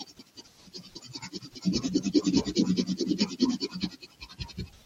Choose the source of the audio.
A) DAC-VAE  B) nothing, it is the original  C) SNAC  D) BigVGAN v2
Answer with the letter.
B